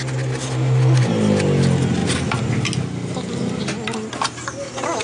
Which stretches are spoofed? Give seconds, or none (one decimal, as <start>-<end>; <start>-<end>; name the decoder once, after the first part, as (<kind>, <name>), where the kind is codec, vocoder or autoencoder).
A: none